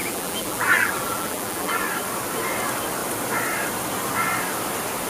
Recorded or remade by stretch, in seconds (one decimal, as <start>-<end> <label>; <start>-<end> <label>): 0.0-1.8 remade; 1.8-5.1 recorded